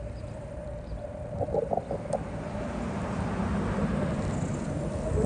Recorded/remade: recorded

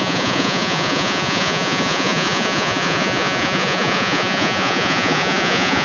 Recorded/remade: remade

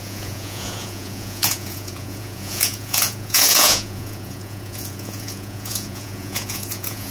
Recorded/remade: remade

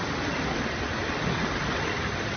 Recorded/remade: recorded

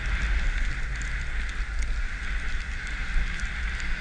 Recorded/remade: recorded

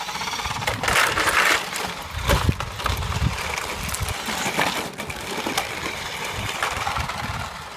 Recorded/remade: remade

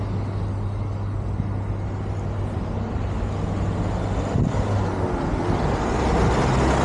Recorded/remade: recorded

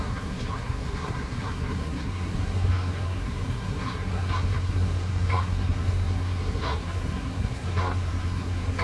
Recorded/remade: remade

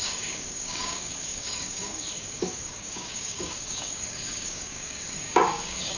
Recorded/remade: remade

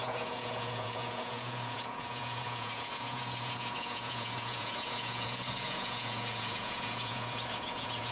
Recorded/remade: remade